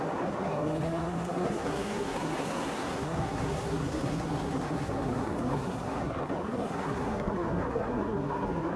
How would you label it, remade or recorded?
remade